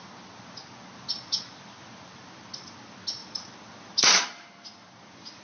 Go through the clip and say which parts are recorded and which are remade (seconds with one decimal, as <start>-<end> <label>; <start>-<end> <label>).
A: 0.0-5.4 recorded